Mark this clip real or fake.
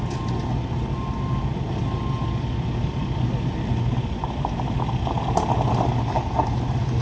real